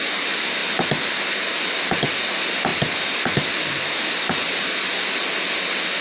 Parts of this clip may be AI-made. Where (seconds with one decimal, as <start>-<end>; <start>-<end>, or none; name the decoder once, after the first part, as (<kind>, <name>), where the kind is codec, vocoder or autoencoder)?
none